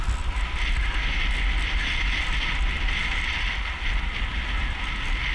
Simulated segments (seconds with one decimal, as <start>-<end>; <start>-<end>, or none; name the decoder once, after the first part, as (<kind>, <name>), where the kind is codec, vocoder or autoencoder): none